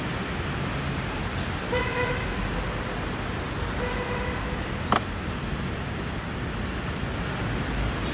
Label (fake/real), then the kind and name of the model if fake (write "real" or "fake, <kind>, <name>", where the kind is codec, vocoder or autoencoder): real